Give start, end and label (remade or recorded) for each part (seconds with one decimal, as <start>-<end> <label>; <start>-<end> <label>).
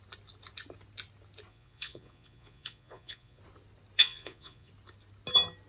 0.0-1.5 recorded; 1.5-3.4 remade; 3.4-4.0 recorded; 4.0-4.7 remade; 4.7-5.7 recorded